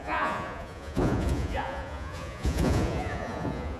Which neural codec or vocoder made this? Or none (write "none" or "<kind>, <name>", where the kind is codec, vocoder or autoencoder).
vocoder, Vocos